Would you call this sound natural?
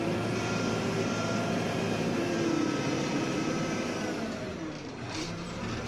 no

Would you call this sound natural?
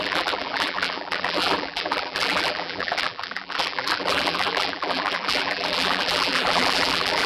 no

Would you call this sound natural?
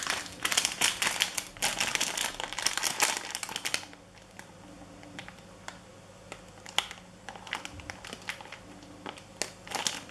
yes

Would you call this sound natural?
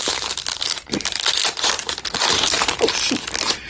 no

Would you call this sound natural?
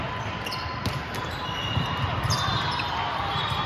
no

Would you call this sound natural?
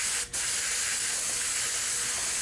yes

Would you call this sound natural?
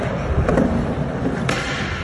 no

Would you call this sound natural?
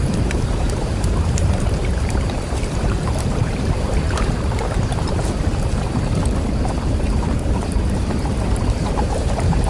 no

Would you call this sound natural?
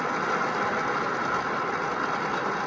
yes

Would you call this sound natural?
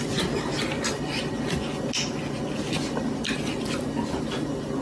yes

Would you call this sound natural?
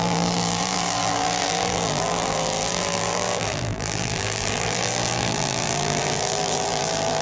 no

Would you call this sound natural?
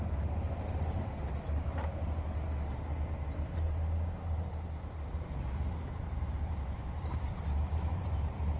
no